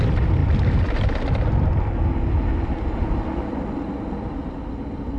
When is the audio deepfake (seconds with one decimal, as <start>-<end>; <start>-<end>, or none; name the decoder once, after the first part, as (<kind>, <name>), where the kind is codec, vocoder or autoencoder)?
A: none